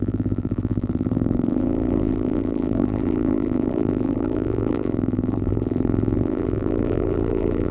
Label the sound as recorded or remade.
remade